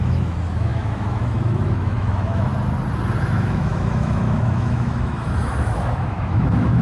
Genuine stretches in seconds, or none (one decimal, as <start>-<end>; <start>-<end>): 2.5-3.2